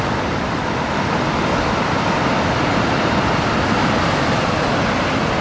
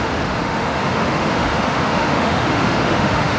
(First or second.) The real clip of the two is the first